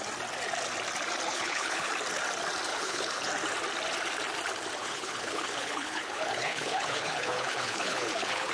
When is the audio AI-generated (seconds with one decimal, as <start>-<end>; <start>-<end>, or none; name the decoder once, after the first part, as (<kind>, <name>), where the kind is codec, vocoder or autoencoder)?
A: 1.3-1.9 (codec, HILCodec); 2.7-3.3; 4.8-8.5